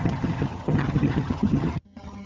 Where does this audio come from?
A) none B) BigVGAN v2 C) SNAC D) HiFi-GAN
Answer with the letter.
D